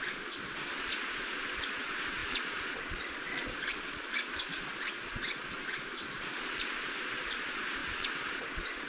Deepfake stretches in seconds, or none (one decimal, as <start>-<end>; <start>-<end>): 0.0-8.9